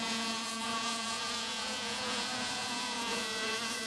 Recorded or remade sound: remade